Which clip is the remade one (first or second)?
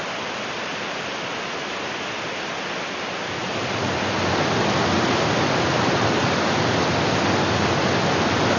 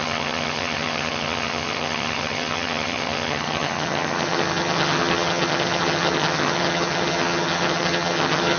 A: second